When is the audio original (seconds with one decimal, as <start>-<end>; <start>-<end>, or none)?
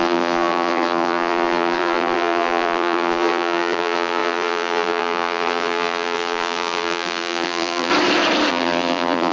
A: 7.9-8.5